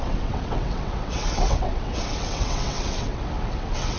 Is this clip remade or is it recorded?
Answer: remade